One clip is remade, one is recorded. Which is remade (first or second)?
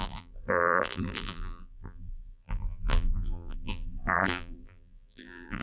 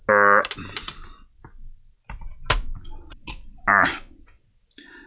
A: first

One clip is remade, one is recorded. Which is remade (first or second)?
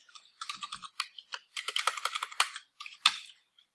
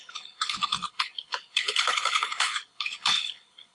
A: second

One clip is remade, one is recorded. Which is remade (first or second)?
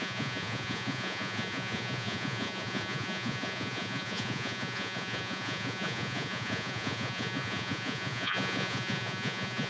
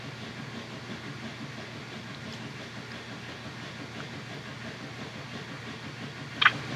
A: first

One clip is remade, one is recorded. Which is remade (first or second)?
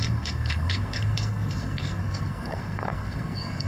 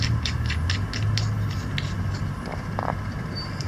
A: first